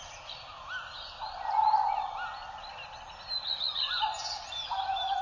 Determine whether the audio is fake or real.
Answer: real